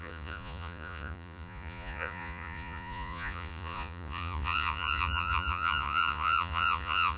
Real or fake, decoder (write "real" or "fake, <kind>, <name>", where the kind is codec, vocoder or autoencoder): fake, vocoder, Vocos